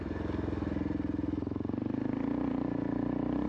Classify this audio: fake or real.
real